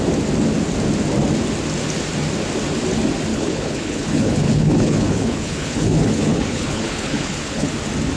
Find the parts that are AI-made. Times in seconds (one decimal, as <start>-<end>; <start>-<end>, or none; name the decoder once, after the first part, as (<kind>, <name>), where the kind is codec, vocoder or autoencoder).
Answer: 3.3-7.7 (codec, HILCodec)